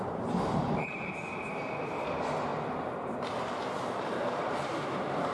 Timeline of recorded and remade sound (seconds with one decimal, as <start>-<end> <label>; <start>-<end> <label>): 0.0-2.5 remade; 2.5-3.4 recorded; 3.4-5.3 remade